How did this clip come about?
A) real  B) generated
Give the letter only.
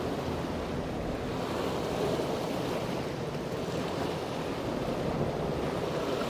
A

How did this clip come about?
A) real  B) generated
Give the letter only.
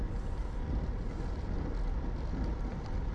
A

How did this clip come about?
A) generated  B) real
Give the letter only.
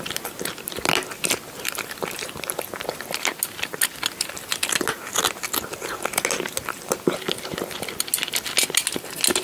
B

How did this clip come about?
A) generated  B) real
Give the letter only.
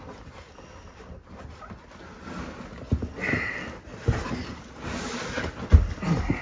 B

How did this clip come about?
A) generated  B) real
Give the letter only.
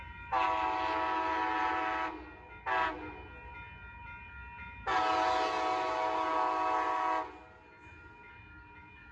B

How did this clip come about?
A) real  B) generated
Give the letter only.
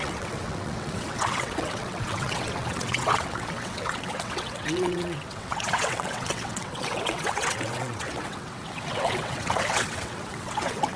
B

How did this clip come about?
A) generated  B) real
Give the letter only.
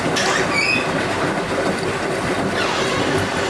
B